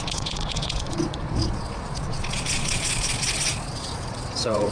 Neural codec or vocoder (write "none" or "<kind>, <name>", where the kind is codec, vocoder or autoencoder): vocoder, Vocos